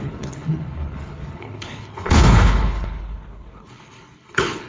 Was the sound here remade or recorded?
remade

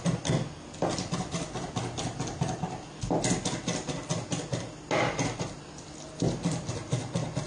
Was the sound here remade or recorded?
recorded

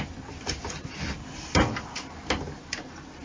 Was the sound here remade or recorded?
recorded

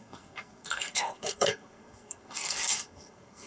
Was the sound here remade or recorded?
remade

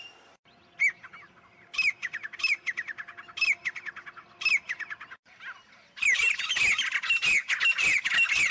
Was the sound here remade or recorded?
recorded